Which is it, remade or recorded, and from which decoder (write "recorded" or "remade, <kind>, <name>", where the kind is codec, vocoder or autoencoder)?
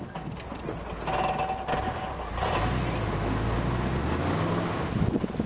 recorded